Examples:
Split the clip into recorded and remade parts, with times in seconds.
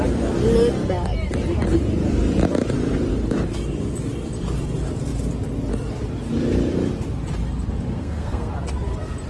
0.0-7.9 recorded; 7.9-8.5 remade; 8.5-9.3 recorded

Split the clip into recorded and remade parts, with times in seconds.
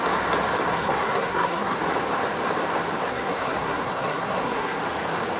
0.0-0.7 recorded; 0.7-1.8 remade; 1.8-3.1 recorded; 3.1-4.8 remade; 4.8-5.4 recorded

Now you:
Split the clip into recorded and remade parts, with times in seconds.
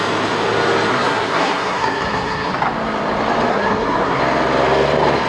0.0-0.9 recorded; 0.9-2.5 remade; 2.5-3.5 recorded; 3.5-4.2 remade; 4.2-5.3 recorded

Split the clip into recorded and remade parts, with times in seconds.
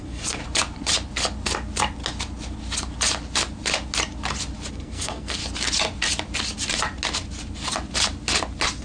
0.0-0.4 remade; 0.4-4.7 recorded; 4.7-5.4 remade; 5.4-8.8 recorded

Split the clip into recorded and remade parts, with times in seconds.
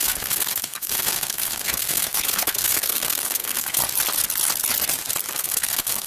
0.0-3.8 remade; 3.8-5.3 recorded; 5.3-6.1 remade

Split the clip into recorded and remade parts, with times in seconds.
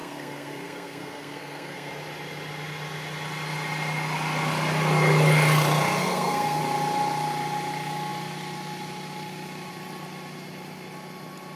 0.0-1.9 remade; 1.9-6.0 recorded; 6.0-6.6 remade; 6.6-11.6 recorded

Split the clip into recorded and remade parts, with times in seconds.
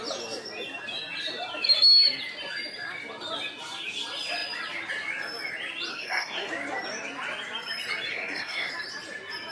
0.0-5.9 recorded; 5.9-6.5 remade; 6.5-8.1 recorded; 8.1-8.7 remade; 8.7-9.5 recorded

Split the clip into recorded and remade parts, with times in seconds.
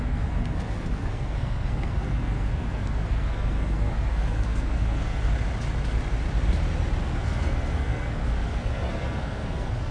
0.0-5.3 remade; 5.3-7.0 recorded; 7.0-9.9 remade